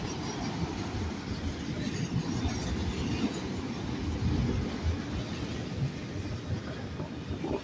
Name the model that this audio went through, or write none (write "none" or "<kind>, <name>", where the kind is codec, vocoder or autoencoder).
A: none